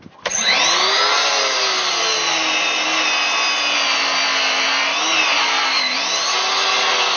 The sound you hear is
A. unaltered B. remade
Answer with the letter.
A